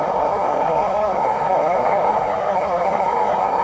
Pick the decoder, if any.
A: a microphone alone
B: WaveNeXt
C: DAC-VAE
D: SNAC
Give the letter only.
D